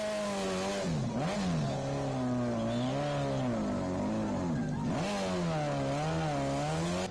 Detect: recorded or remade recorded